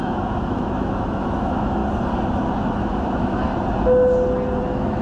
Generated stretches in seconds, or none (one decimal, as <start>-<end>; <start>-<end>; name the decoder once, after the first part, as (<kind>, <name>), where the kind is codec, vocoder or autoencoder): 0.0-1.8 (autoencoder, DAC-VAE); 2.6-3.5; 4.6-5.0